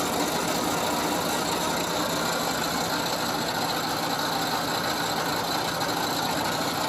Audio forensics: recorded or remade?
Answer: recorded